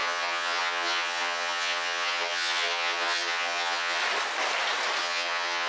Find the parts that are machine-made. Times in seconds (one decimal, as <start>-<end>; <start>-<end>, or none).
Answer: 0.0-4.0; 5.0-5.7